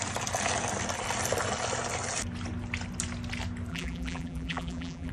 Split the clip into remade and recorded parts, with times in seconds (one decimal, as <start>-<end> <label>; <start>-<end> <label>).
0.0-3.7 recorded; 3.7-5.1 remade